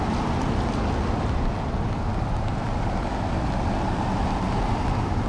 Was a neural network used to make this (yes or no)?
no